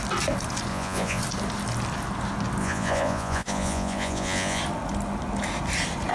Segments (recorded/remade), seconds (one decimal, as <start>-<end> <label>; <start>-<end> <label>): 0.0-0.7 recorded; 0.7-1.2 remade; 1.2-2.6 recorded; 2.6-4.6 remade; 4.6-6.1 recorded

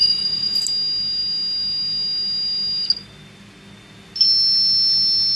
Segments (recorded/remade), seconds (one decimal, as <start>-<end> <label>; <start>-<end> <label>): 0.0-0.6 remade; 0.6-5.4 recorded

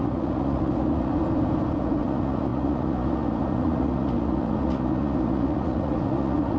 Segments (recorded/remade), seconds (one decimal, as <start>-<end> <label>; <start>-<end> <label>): 0.0-1.1 remade; 1.1-1.8 recorded; 1.8-6.6 remade

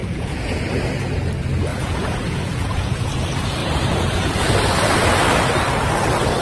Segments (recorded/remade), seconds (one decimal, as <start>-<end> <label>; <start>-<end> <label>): 0.0-0.6 remade; 0.6-1.7 recorded; 1.7-3.1 remade; 3.1-3.6 recorded; 3.6-4.5 remade; 4.5-6.4 recorded

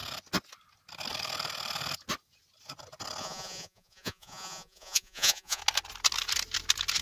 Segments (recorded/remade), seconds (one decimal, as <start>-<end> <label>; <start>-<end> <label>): 0.0-3.2 recorded; 3.2-5.6 remade; 5.6-7.0 recorded

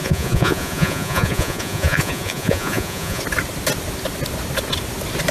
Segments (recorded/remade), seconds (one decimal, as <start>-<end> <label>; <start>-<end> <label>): 0.0-3.2 remade; 3.2-5.3 recorded

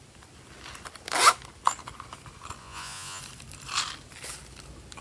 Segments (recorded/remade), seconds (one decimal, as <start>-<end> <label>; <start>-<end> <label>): 0.0-2.6 recorded; 2.6-3.2 remade; 3.2-5.0 recorded

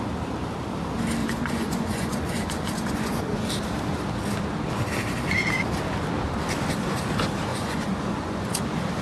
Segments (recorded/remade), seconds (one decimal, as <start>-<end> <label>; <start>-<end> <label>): 0.0-1.2 recorded; 1.2-3.5 remade; 3.5-7.5 recorded; 7.5-8.6 remade; 8.6-9.0 recorded